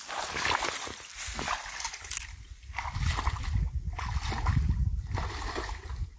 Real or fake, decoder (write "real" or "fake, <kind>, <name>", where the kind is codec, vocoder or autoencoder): real